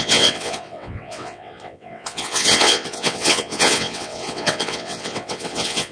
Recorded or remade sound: remade